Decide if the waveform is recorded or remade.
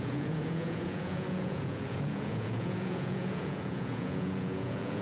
remade